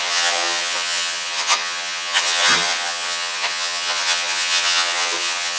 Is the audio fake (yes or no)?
yes